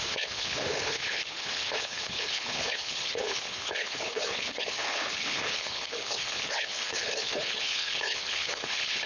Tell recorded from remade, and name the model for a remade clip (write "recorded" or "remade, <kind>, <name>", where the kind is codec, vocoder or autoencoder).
remade, codec, HILCodec